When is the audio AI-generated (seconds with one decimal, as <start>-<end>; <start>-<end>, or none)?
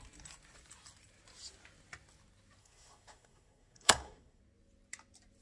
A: 2.6-4.4